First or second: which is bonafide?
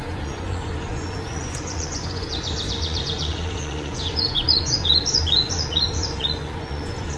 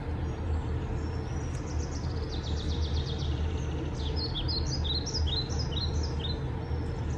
second